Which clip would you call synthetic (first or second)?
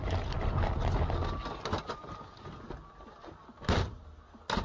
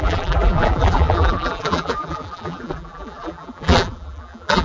second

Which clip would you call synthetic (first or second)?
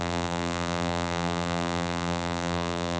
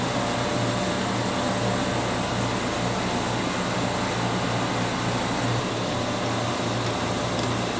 first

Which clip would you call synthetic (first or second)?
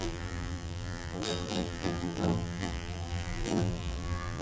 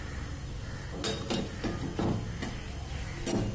first